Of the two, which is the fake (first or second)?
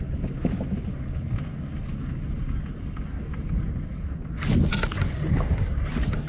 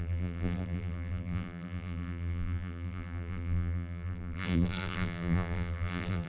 second